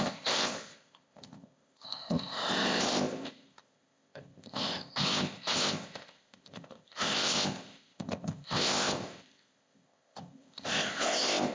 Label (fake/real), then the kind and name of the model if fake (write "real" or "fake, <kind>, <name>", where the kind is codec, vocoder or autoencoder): fake, codec, ZipCodec